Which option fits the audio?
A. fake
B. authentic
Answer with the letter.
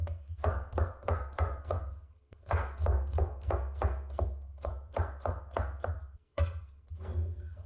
A